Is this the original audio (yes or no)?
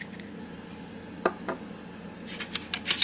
yes